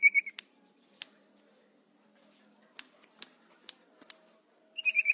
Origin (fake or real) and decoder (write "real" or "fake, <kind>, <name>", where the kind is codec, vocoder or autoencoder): real